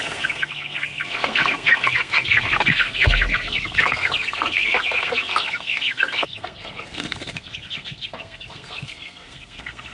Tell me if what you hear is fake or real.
fake